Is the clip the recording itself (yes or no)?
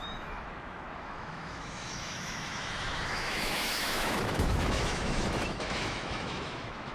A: no